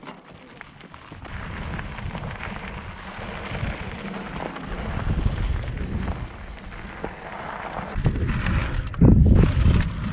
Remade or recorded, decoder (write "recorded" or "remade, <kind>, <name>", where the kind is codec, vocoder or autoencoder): recorded